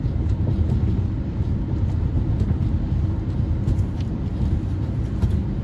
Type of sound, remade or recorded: recorded